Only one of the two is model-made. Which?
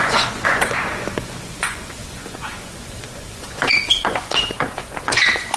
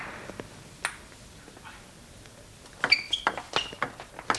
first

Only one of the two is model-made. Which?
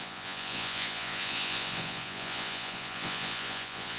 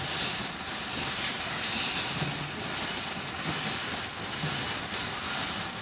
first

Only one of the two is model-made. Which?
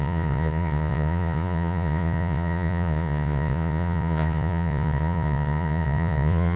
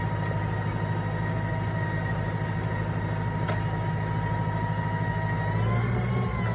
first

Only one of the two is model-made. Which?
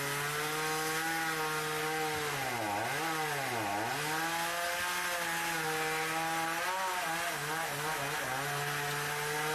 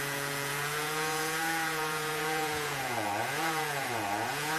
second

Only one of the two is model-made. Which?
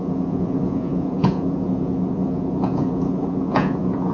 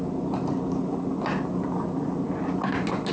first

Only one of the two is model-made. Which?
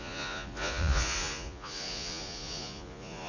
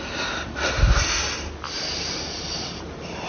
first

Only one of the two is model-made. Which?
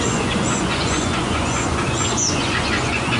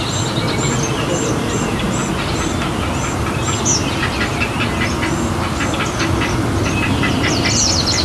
first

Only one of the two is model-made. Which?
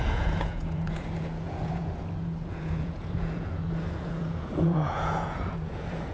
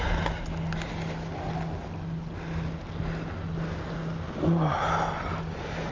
first